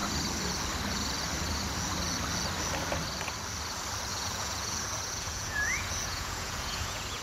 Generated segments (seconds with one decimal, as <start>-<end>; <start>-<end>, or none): 4.1-7.2